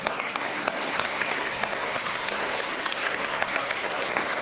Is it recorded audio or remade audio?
remade